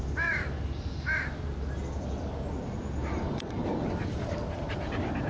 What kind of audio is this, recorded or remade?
recorded